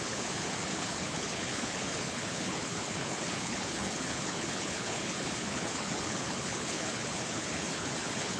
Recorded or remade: remade